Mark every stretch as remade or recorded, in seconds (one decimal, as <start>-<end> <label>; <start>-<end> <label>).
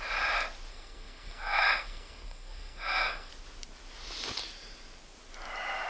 0.0-0.7 recorded; 0.7-3.3 remade; 3.3-5.9 recorded